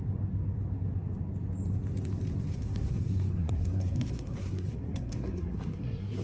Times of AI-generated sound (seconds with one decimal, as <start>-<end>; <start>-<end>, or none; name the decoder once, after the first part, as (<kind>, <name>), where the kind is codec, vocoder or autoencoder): 2.5-6.2 (codec, SNAC)